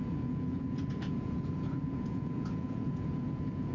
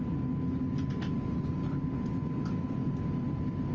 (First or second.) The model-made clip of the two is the first